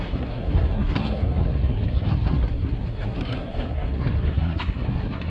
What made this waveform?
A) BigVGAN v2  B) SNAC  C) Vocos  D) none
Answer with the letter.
B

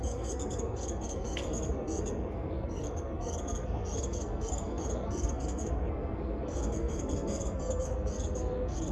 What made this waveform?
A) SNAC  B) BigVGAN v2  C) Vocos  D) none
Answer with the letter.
A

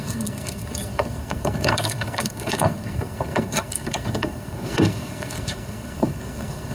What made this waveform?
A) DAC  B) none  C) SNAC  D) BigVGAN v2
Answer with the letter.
C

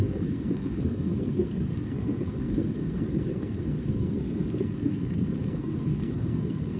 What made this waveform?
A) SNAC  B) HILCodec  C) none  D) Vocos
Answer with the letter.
A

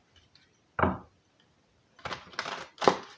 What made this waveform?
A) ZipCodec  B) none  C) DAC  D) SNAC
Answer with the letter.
B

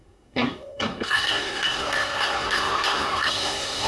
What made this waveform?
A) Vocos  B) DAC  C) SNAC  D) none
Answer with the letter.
C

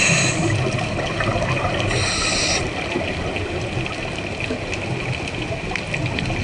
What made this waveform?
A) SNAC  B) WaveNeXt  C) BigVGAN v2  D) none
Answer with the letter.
D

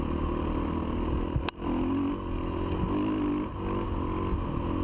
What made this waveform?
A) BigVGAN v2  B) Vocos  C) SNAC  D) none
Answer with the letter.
D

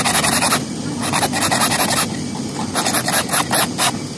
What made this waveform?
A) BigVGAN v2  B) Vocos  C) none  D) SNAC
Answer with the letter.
C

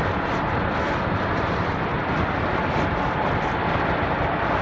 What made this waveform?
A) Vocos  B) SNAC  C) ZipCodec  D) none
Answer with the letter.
D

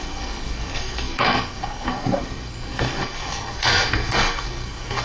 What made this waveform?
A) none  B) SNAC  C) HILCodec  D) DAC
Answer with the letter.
B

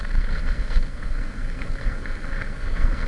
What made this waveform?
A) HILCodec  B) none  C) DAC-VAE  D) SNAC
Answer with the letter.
D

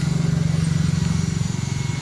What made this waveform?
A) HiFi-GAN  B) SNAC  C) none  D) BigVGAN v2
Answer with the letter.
C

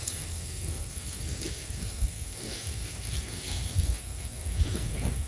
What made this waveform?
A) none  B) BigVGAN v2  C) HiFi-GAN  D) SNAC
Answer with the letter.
D